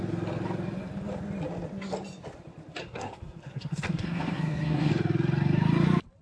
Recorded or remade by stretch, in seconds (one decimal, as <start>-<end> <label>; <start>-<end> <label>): 0.0-2.8 recorded; 2.8-4.9 remade; 4.9-6.2 recorded